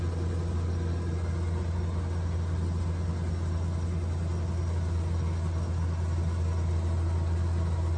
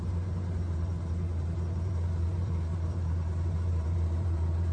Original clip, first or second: first